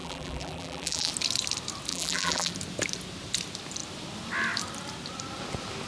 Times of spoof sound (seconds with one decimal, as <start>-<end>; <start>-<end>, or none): 0.0-1.1; 1.9-2.5